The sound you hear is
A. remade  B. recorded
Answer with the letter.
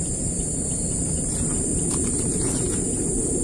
A